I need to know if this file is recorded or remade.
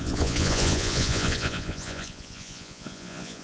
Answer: remade